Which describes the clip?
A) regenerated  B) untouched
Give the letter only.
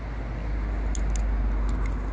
B